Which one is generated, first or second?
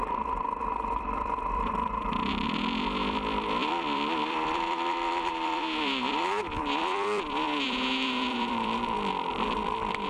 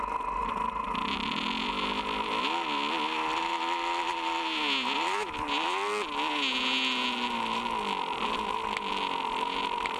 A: first